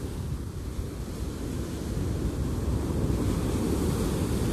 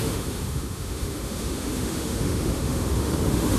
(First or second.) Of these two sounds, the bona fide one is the first